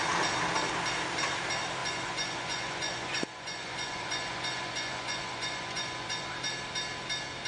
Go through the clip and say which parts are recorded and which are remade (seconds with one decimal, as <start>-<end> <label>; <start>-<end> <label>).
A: 0.0-1.8 recorded; 1.8-6.3 remade; 6.3-7.5 recorded